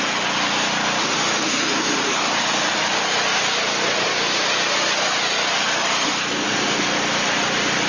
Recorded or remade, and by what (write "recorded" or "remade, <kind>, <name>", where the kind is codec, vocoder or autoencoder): recorded